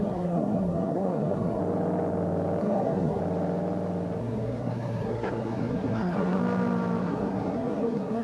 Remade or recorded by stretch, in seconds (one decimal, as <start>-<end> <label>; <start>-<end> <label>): 0.0-1.6 remade; 1.6-2.6 recorded; 2.6-3.2 remade; 3.2-4.2 recorded; 4.2-6.4 remade; 6.4-7.0 recorded; 7.0-8.2 remade